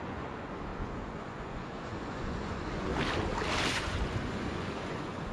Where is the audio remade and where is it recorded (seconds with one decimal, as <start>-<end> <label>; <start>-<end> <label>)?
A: 0.0-2.9 remade; 2.9-3.7 recorded; 3.7-5.3 remade